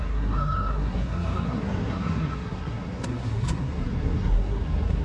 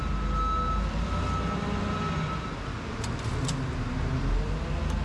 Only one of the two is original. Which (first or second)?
second